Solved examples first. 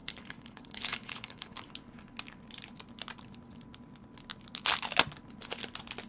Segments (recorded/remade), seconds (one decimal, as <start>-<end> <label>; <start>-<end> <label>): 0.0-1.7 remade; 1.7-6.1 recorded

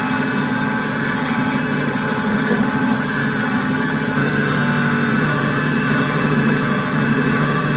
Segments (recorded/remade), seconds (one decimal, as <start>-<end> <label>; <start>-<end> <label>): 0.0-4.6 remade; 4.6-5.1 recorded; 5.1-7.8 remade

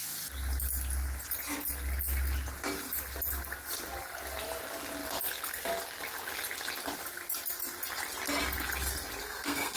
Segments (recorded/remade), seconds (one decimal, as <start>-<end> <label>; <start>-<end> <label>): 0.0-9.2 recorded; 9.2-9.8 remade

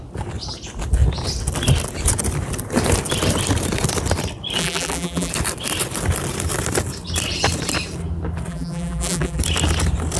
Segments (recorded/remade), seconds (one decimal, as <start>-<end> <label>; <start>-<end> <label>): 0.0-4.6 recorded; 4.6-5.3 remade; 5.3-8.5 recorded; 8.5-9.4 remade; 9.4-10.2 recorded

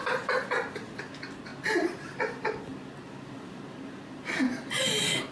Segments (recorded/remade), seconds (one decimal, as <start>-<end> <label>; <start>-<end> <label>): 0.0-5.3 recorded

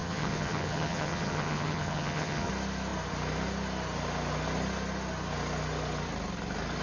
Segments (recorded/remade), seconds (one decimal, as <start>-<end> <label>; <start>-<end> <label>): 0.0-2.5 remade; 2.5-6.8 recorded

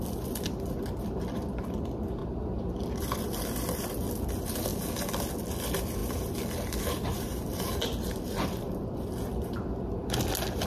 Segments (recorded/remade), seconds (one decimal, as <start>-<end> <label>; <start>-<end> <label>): 0.0-2.2 remade; 2.2-3.0 recorded; 3.0-4.7 remade; 4.7-5.3 recorded; 5.3-10.7 remade

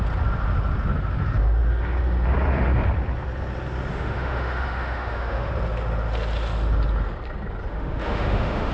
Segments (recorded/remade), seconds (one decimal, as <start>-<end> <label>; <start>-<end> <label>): 0.0-3.9 recorded; 3.9-5.5 remade; 5.5-7.7 recorded; 7.7-8.7 remade